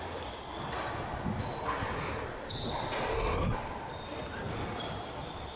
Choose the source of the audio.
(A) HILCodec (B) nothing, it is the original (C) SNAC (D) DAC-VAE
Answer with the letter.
B